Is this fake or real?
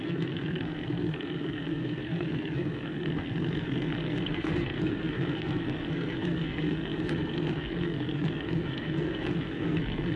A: fake